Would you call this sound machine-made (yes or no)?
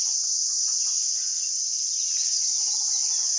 yes